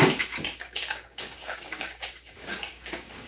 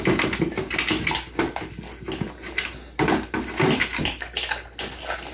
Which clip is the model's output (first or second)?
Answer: first